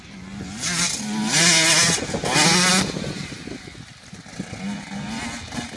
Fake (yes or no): no